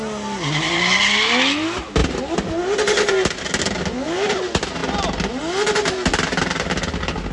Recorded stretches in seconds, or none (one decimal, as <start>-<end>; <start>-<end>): 0.0-7.3